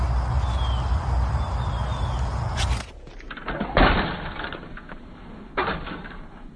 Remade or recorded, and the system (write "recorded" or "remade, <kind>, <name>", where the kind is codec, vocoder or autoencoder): recorded